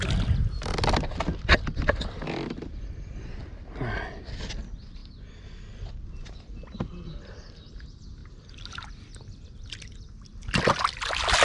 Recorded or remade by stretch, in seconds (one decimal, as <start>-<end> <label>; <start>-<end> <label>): 0.0-11.4 recorded